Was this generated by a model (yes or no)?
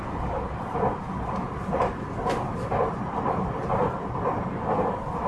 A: no